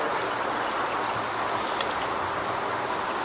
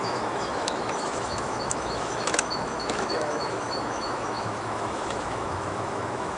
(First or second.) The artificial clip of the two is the second